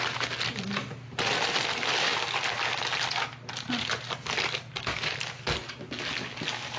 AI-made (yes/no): no